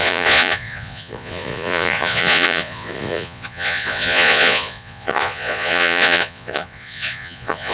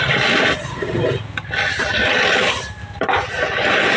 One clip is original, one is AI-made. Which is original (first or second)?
second